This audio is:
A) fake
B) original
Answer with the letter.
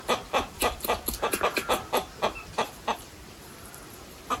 A